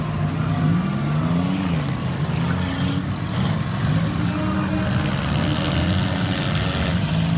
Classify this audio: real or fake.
real